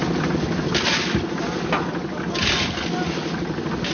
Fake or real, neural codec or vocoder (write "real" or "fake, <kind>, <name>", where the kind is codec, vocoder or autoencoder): real